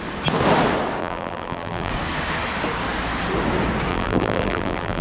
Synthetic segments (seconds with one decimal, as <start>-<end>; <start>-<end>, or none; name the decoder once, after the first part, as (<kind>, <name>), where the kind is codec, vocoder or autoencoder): 1.0-1.9 (vocoder, BigVGAN v2); 3.9-5.0